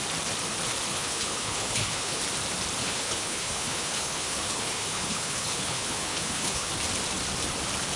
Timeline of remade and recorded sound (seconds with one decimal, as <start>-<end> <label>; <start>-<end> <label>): 0.0-0.9 recorded; 0.9-2.2 remade; 2.2-2.8 recorded; 2.8-6.7 remade; 6.7-8.0 recorded